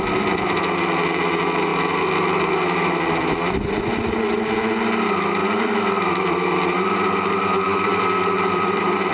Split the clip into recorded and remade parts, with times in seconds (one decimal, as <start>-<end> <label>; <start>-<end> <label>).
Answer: 0.0-5.4 recorded; 5.4-9.1 remade